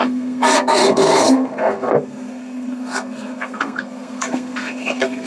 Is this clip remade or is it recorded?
remade